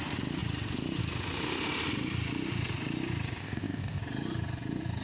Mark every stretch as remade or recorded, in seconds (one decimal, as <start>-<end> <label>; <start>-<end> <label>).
0.0-3.4 recorded; 3.4-4.0 remade; 4.0-5.0 recorded